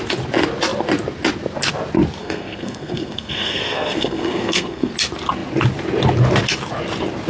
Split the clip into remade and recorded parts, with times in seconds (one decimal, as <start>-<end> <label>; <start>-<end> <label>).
0.0-2.2 recorded; 2.2-4.9 remade; 4.9-7.3 recorded